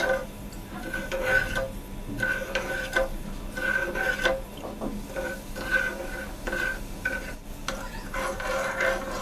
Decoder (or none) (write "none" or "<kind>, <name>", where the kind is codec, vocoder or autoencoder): none